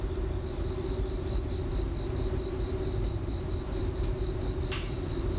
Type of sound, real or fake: real